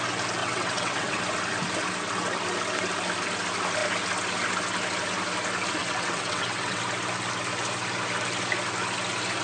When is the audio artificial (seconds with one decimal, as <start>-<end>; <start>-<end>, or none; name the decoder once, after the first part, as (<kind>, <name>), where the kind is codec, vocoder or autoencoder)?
0.4-1.2 (vocoder, WaveNeXt); 5.8-6.8